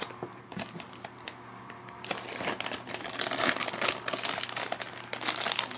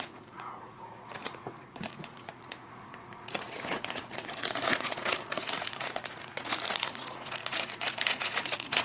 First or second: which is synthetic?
second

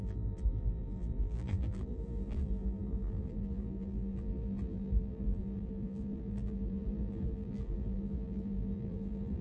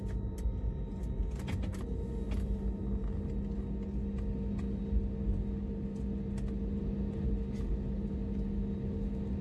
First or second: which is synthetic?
first